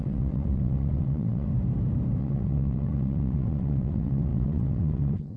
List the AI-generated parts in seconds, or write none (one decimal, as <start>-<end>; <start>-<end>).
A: 0.0-1.5; 2.2-5.4